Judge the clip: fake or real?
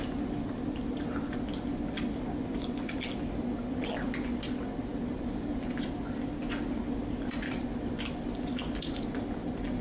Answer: real